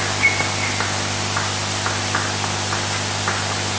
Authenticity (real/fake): real